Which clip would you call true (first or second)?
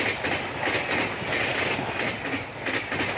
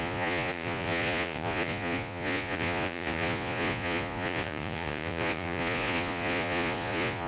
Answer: first